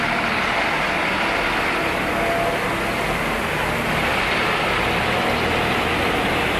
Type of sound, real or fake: real